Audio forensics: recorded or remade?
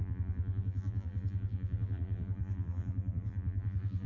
remade